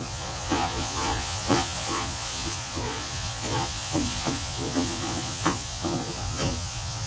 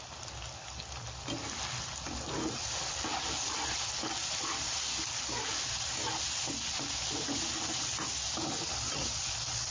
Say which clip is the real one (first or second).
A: second